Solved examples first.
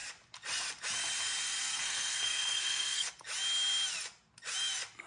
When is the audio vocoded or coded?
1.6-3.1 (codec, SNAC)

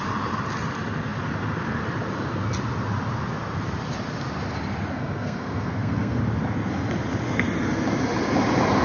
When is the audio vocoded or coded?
4.9-6.2 (codec, SNAC)

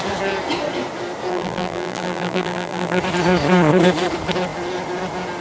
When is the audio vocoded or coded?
1.3-3.0 (vocoder, BigVGAN v2)

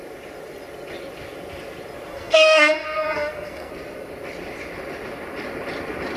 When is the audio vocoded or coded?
2.1-3.7 (codec, SNAC)